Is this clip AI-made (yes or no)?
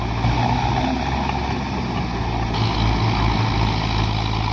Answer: no